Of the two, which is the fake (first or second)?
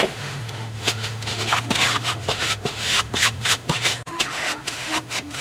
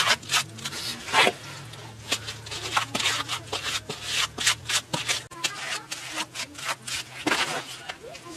first